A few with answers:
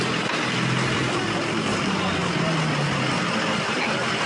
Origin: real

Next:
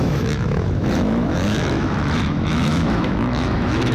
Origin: fake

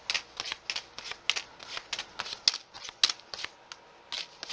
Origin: real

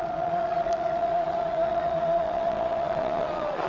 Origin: fake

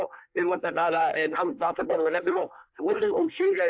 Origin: fake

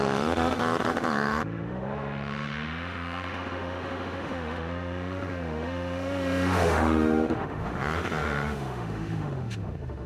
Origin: fake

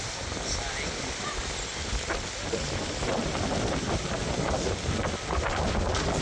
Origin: real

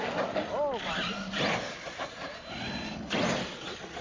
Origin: real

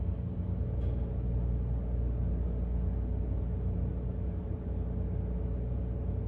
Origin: real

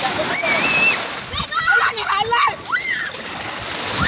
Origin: real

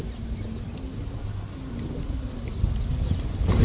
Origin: real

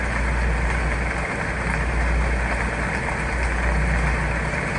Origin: real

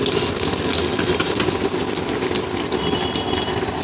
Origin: real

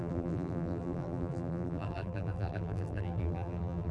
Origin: fake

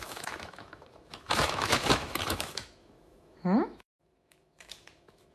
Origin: fake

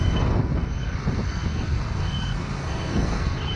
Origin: fake